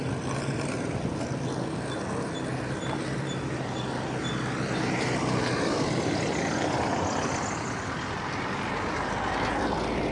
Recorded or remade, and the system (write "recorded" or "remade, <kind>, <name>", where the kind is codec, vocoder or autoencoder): recorded